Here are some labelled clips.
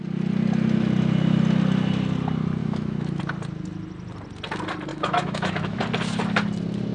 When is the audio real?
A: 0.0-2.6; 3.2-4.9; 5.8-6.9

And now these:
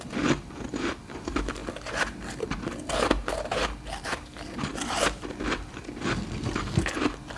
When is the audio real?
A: 0.0-7.4

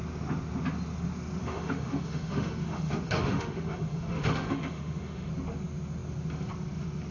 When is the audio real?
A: 0.0-1.4; 5.3-7.1

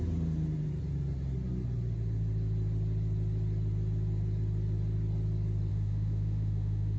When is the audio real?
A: 0.0-5.7

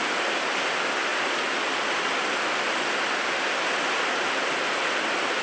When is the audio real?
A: 0.0-5.4

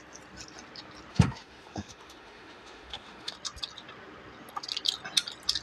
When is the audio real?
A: 0.0-1.1; 3.3-5.6

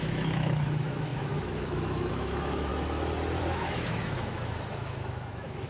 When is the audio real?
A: 2.7-3.4

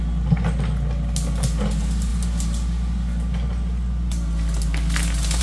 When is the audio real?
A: 0.0-5.4